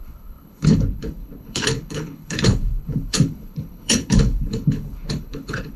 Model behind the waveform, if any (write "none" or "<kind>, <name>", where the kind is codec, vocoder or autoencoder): codec, HILCodec